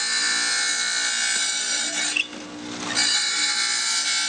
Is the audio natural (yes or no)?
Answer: yes